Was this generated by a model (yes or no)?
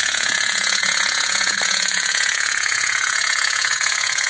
yes